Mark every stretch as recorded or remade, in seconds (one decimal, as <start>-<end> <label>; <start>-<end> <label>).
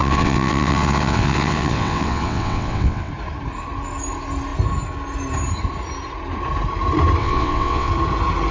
0.0-3.1 remade; 3.1-7.2 recorded; 7.2-7.9 remade; 7.9-8.5 recorded